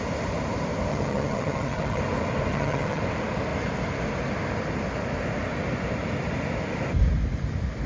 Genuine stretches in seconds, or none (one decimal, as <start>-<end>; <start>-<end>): 0.0-0.9; 2.0-2.5; 3.0-7.9